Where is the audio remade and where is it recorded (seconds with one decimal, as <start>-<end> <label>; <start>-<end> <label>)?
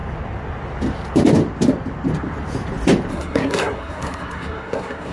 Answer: 0.0-3.1 recorded; 3.1-5.1 remade